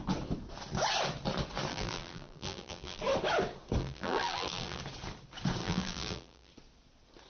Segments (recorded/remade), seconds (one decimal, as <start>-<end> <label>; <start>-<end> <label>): 0.0-1.7 recorded; 1.7-3.0 remade; 3.0-3.8 recorded; 3.8-4.8 remade; 4.8-5.6 recorded; 5.6-6.5 remade; 6.5-7.3 recorded